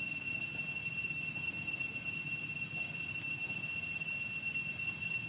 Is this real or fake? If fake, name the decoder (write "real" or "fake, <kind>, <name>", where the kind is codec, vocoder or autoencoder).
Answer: real